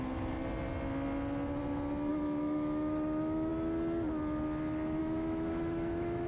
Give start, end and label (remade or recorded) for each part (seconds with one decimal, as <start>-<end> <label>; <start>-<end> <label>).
0.0-2.1 recorded; 2.1-3.5 remade; 3.5-5.0 recorded; 5.0-6.3 remade